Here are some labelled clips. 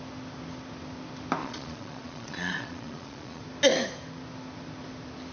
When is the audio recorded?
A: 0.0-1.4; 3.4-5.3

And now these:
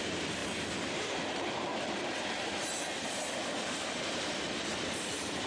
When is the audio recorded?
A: 0.4-3.7

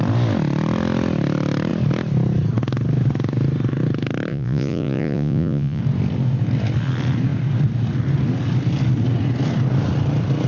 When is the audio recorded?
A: 0.0-4.3; 5.8-10.5

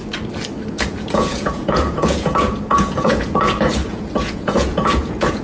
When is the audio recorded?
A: 0.0-0.7